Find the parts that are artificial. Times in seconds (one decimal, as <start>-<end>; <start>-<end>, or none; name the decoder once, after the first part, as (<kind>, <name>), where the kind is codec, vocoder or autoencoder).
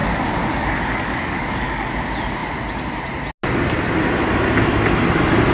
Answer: 0.0-1.9 (codec, DAC)